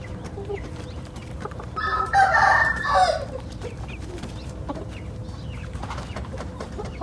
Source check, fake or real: fake